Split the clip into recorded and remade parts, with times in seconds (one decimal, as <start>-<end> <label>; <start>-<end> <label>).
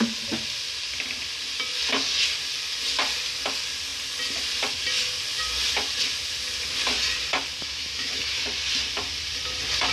0.0-7.6 recorded; 7.6-8.4 remade; 8.4-9.9 recorded